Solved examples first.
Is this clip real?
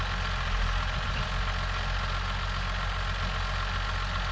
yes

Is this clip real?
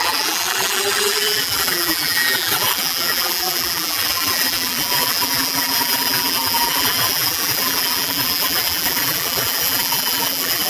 no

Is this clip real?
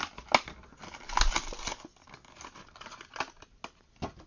yes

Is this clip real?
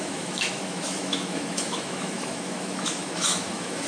no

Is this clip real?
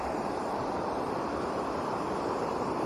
no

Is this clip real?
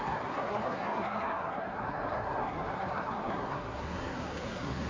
no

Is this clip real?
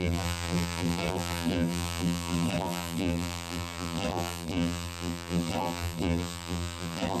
no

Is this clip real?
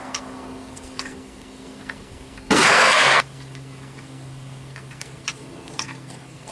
no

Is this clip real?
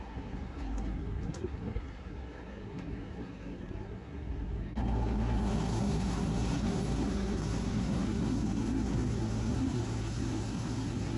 no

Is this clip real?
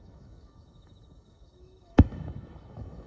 no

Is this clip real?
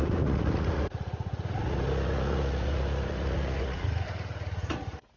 no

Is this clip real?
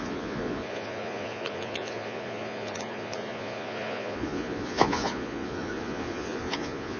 no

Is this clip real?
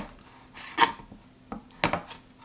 yes